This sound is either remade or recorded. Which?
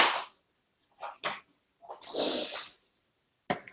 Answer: recorded